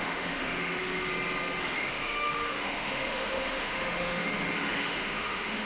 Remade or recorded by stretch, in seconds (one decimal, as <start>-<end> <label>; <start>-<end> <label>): 0.0-1.1 remade; 1.1-1.6 recorded; 1.6-5.7 remade